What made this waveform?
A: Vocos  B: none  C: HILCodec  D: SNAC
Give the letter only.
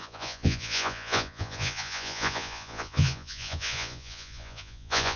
A